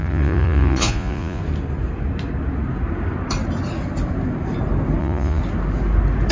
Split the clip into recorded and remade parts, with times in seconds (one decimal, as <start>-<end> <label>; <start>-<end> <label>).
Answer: 0.0-1.4 remade; 1.4-5.0 recorded; 5.0-5.4 remade; 5.4-6.3 recorded